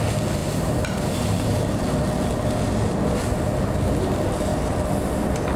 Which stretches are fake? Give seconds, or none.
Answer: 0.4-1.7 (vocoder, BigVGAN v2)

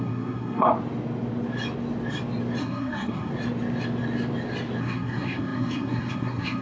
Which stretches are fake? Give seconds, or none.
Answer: 0.0-0.7 (codec, SNAC); 2.6-3.3; 4.8-6.6